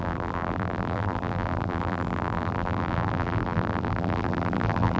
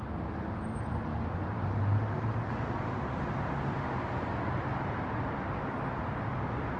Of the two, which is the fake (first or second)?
first